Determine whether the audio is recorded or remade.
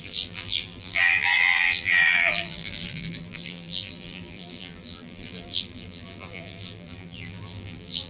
remade